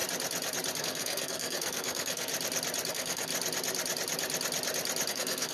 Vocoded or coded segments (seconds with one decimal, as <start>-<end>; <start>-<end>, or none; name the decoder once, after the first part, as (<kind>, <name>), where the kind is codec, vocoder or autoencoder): 0.8-2.3 (codec, SNAC); 2.9-3.3; 5.1-5.5